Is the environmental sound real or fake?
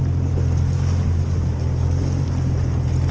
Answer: real